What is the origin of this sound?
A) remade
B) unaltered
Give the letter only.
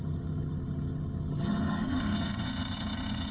A